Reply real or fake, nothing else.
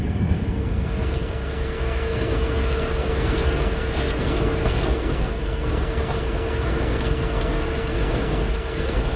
fake